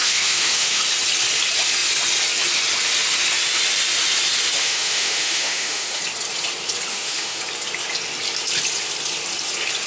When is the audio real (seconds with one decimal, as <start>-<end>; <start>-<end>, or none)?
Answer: 0.8-4.6; 6.0-6.9; 7.4-9.9